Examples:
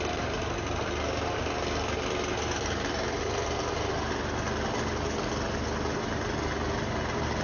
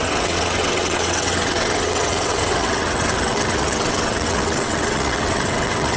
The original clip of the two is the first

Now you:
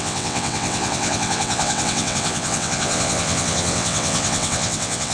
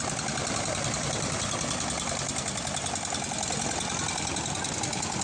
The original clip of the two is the second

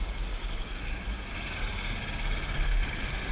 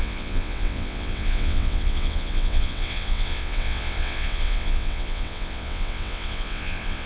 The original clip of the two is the first